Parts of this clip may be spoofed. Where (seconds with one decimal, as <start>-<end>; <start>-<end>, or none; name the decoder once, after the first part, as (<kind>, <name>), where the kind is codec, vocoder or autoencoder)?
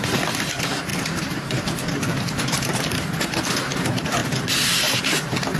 0.9-2.8 (vocoder, BigVGAN v2); 4.2-5.0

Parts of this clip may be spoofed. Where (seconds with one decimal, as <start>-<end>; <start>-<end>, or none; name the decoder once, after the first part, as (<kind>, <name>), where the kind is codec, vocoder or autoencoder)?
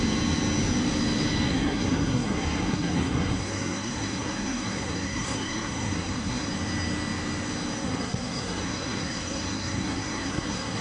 1.5-6.5 (codec, SNAC); 7.8-10.8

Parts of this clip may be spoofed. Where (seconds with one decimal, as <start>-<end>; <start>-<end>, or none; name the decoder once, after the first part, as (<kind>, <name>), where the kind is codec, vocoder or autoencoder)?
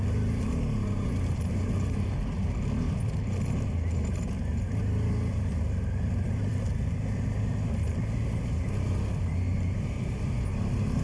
none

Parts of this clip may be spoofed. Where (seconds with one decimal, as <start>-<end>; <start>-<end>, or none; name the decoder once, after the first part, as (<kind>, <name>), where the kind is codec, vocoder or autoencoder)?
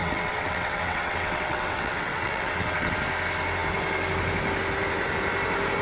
0.0-2.9 (vocoder, WaveNeXt)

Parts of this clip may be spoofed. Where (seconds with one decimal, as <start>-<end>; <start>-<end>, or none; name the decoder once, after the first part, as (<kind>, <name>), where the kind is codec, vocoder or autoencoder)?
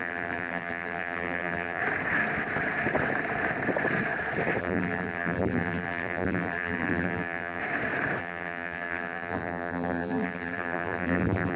0.0-1.8 (vocoder, BigVGAN v2); 4.6-7.6; 8.2-11.6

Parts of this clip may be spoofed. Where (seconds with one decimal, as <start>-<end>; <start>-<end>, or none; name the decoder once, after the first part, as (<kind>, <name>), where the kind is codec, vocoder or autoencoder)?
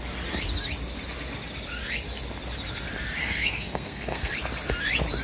3.2-4.3 (codec, SNAC)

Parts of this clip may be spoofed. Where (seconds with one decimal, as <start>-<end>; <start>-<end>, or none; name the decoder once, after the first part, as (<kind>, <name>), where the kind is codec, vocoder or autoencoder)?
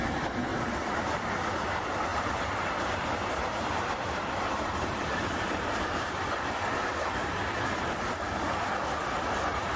0.5-1.6 (vocoder, BigVGAN v2); 2.1-6.3